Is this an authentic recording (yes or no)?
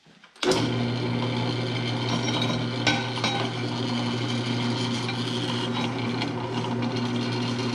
yes